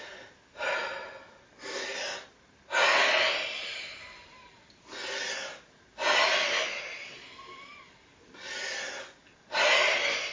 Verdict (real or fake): real